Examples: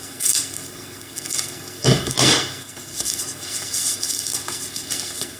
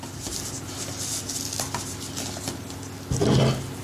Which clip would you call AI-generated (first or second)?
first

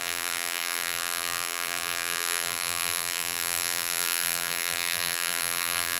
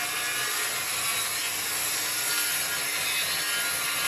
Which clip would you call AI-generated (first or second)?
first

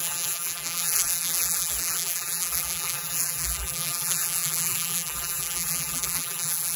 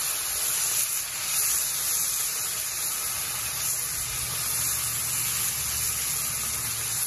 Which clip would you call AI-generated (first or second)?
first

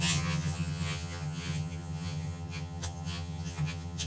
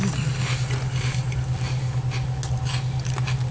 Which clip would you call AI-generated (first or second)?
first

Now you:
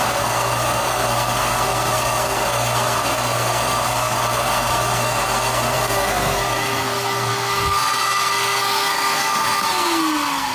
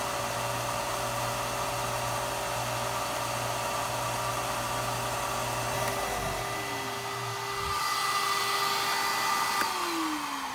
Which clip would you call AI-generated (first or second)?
first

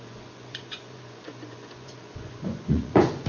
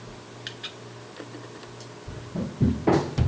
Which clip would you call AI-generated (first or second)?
first